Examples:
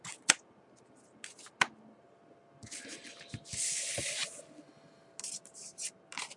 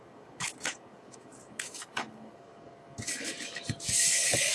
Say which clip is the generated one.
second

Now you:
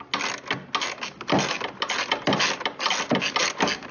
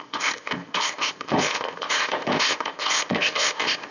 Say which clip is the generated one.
second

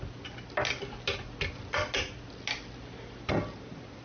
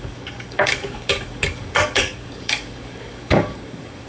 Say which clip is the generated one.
second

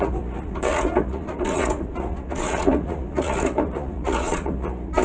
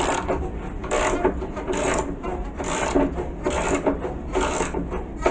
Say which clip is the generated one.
first